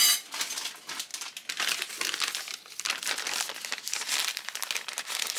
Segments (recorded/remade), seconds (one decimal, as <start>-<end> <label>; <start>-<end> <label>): 0.0-5.4 recorded